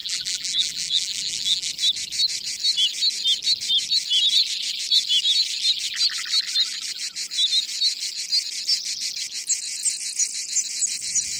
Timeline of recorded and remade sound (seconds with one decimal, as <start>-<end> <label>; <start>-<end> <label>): 0.0-1.7 remade; 1.7-11.4 recorded